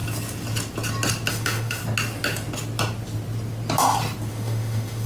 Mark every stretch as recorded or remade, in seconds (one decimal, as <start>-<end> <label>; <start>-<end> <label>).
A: 0.0-1.3 recorded; 1.3-1.8 remade; 1.8-4.3 recorded; 4.3-5.1 remade